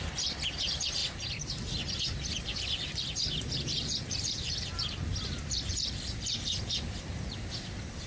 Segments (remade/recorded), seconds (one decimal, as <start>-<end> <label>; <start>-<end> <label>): 0.0-1.0 remade; 1.0-2.0 recorded; 2.0-5.1 remade; 5.1-5.7 recorded; 5.7-8.1 remade